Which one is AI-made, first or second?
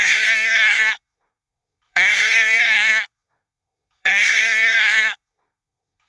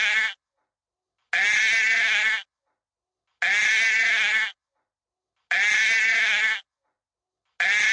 first